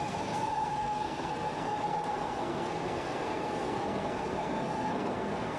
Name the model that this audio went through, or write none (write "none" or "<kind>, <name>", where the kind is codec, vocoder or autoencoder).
codec, SNAC